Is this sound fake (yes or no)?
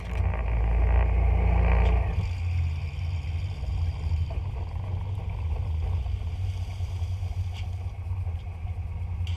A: no